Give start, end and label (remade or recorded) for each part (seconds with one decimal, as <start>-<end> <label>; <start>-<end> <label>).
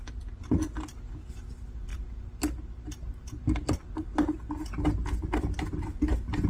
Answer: 0.0-6.5 recorded